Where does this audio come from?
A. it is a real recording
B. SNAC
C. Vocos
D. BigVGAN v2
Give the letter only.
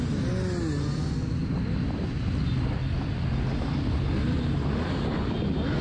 A